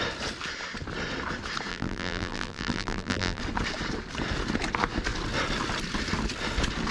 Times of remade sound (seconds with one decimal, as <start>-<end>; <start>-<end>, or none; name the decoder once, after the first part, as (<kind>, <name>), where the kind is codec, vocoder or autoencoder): 1.7-3.4 (vocoder, BigVGAN v2)